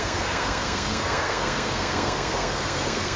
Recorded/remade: remade